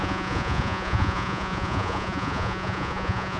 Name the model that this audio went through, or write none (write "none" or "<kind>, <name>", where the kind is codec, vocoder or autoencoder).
vocoder, Vocos